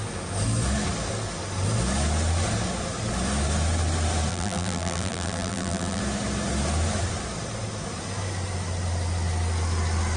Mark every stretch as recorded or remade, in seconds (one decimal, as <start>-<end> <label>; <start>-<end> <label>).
0.0-4.3 recorded; 4.3-6.0 remade; 6.0-10.2 recorded